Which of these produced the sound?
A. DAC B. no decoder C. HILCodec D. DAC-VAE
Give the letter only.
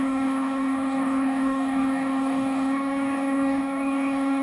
A